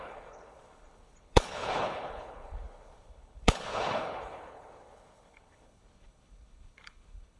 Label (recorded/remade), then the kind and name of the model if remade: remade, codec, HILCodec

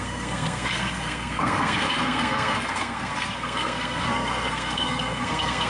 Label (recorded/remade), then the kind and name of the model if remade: remade, codec, SNAC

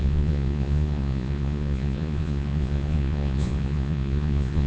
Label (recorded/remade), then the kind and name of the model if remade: remade, vocoder, Vocos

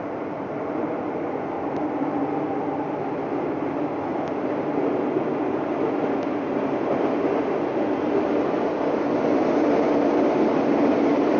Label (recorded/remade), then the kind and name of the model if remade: recorded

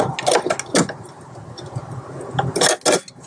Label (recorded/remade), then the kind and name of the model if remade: recorded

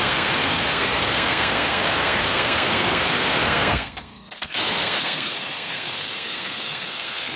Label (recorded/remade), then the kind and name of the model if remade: remade, codec, SNAC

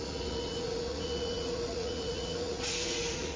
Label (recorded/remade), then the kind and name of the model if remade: remade, vocoder, Vocos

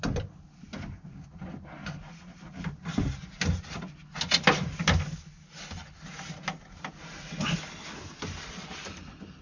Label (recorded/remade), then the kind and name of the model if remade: recorded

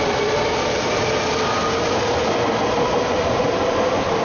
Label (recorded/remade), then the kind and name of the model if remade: recorded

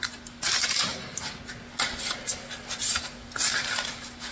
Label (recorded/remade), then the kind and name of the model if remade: recorded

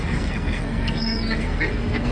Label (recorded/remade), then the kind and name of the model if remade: remade, codec, SNAC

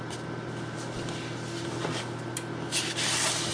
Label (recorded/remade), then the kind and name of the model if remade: recorded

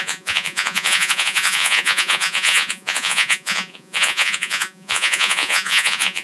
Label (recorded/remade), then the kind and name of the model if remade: remade, vocoder, Vocos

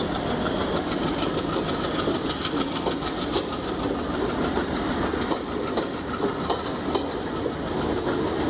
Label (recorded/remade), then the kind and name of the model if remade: recorded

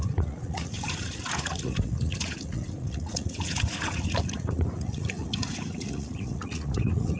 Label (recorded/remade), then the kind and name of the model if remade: remade, vocoder, Vocos